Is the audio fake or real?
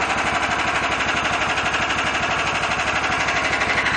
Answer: real